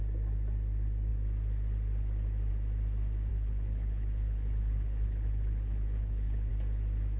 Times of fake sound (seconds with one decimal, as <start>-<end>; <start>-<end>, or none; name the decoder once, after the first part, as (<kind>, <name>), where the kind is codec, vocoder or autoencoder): 3.3-6.5 (codec, HILCodec)